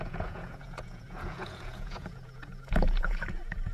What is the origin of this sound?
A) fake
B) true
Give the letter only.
A